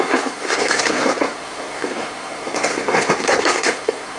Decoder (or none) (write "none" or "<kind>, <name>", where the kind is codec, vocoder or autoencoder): codec, SNAC